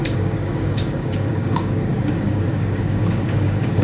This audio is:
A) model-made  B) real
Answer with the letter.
A